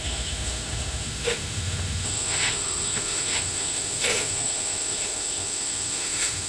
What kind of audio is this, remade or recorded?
remade